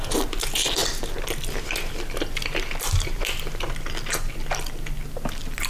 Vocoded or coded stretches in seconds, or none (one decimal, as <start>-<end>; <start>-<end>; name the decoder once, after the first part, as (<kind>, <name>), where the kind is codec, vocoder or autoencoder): none